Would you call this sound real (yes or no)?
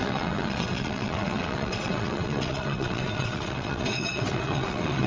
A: no